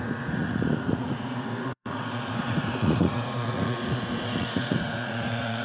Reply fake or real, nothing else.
fake